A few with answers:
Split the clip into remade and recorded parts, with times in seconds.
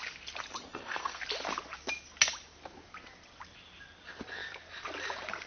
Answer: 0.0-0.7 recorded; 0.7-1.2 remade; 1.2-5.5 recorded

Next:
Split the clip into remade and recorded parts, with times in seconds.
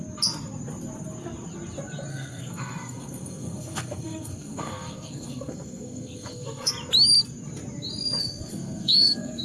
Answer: 0.0-2.1 recorded; 2.1-6.7 remade; 6.7-8.2 recorded; 8.2-9.4 remade